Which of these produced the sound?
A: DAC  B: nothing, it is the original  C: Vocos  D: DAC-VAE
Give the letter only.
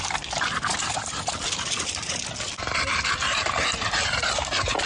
B